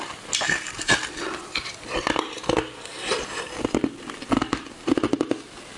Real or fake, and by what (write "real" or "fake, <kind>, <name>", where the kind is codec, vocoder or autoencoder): real